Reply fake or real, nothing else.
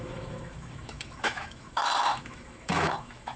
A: fake